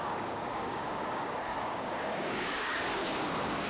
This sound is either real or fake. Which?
fake